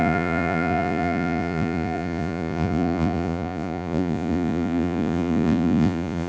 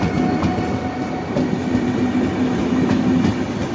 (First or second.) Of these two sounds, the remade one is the first